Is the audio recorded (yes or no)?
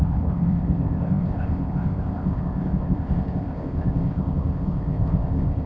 no